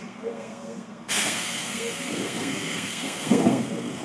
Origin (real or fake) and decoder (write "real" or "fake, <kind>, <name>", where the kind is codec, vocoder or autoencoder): fake, codec, SNAC